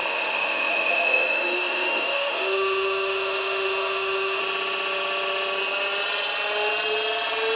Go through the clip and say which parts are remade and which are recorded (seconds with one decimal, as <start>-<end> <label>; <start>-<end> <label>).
0.0-4.4 remade; 4.4-7.5 recorded